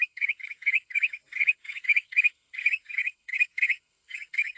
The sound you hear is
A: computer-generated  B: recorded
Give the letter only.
A